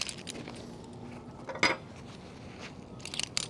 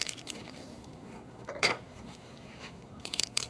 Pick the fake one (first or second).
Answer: second